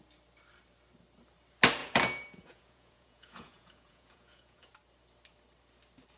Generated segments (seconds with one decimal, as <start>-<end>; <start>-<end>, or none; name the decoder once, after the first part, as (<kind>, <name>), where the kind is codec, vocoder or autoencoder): 1.8-4.7 (vocoder, Vocos)